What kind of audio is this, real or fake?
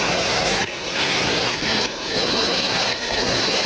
fake